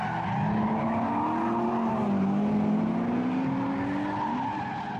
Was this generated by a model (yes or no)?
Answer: no